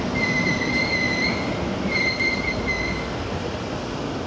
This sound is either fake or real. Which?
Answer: real